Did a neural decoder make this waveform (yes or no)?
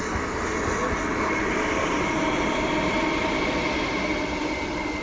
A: no